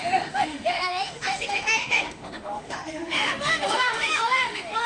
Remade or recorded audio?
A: remade